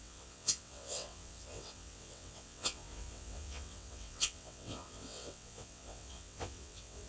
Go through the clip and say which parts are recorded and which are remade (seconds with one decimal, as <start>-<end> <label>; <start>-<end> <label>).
0.0-7.1 remade